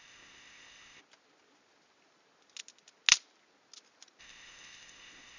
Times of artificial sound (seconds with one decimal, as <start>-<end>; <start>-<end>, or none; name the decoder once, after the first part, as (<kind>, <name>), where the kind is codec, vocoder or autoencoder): 0.0-1.0 (codec, ZipCodec); 4.2-5.4